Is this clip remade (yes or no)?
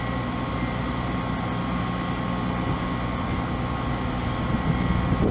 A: no